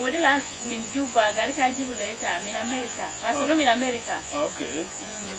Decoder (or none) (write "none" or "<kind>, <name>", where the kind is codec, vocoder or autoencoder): vocoder, Vocos